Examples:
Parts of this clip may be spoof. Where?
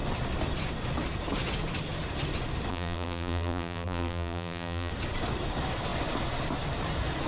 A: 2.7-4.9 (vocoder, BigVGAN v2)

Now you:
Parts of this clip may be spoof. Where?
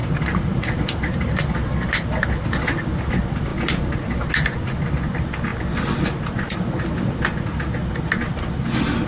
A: 0.0-1.5 (vocoder, BigVGAN v2)